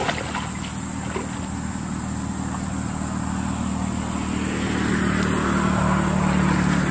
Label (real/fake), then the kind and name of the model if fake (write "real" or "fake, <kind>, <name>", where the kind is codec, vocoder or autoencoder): real